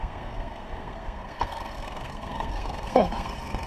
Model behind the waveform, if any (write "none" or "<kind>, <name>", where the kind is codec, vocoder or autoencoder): codec, SNAC